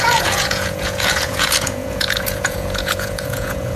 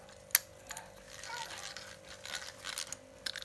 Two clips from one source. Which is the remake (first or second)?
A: first